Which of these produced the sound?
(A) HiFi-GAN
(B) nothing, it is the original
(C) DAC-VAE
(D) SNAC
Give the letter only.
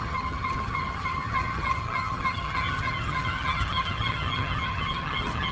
A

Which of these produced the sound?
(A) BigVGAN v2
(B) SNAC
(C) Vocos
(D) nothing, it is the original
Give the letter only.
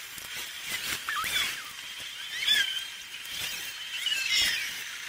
A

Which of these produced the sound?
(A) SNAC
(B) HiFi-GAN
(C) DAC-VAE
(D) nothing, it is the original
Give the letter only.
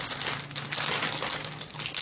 D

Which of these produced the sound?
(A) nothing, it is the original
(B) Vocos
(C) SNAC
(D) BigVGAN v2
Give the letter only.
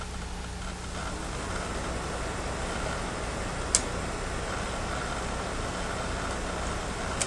A